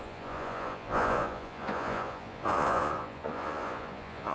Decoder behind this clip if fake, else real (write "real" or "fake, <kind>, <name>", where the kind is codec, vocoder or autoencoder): fake, vocoder, Vocos